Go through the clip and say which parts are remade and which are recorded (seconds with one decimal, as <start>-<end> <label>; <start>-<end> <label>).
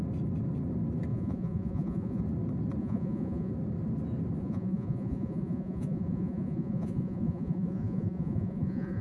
0.0-1.1 recorded; 1.1-2.2 remade; 2.2-2.8 recorded; 2.8-3.5 remade; 3.5-4.4 recorded; 4.4-9.0 remade